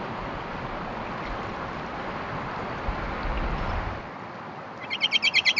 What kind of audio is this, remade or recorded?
recorded